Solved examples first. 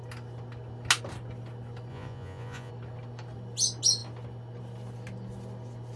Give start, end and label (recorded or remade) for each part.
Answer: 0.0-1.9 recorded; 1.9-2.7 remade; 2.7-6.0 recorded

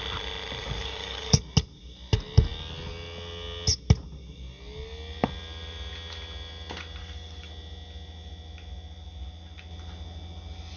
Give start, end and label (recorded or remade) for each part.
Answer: 0.0-0.6 recorded; 0.6-1.4 remade; 1.4-7.0 recorded; 7.0-7.5 remade; 7.5-10.8 recorded

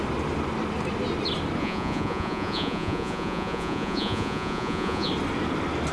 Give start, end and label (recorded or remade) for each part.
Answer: 0.0-1.6 recorded; 1.6-5.1 remade; 5.1-5.9 recorded

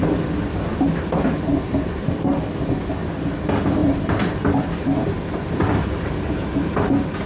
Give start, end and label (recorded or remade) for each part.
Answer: 0.0-3.8 recorded; 3.8-4.5 remade; 4.5-7.3 recorded

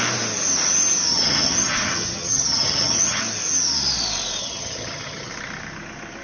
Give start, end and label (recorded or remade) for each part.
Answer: 0.0-1.1 recorded; 1.1-3.2 remade; 3.2-4.4 recorded; 4.4-5.3 remade; 5.3-6.2 recorded

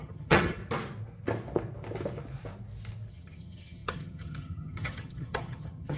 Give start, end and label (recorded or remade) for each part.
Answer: 0.0-0.6 remade; 0.6-3.1 recorded; 3.1-6.0 remade